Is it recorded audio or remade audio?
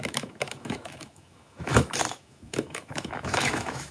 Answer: remade